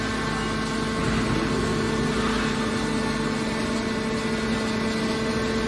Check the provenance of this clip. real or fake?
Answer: real